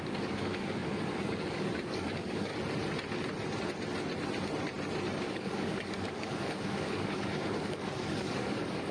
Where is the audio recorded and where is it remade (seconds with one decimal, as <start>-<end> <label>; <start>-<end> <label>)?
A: 0.0-2.5 remade; 2.5-5.2 recorded; 5.2-8.9 remade